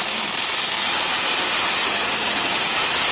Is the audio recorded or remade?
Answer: recorded